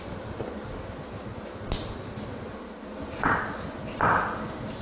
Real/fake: real